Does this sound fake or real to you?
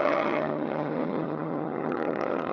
fake